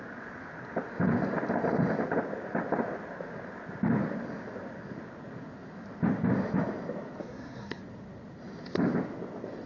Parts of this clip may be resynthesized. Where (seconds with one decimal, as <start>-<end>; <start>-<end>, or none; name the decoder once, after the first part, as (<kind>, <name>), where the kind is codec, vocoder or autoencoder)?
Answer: 7.2-7.8 (codec, SNAC)